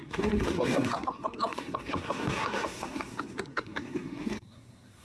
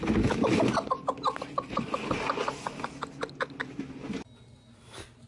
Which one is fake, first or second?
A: first